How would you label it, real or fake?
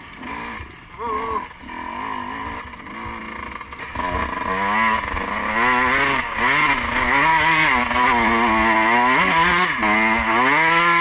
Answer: real